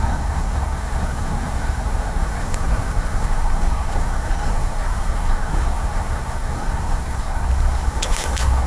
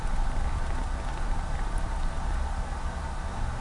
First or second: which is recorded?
second